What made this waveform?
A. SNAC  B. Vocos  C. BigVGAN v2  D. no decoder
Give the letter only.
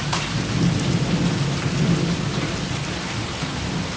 D